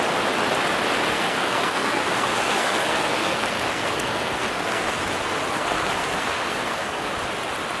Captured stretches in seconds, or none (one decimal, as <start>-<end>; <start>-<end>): 0.0-1.1; 5.0-5.5; 7.1-7.8